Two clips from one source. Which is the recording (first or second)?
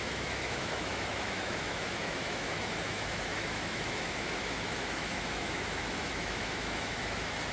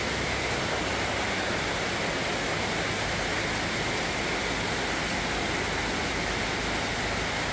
second